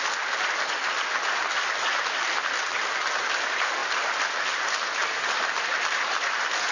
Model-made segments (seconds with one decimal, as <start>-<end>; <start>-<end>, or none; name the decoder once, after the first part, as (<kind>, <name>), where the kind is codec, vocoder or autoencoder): none